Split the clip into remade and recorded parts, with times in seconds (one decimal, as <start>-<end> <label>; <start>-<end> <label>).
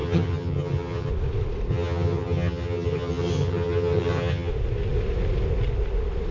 0.0-1.1 remade; 1.1-1.7 recorded; 1.7-4.5 remade; 4.5-6.3 recorded